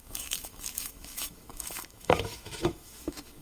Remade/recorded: remade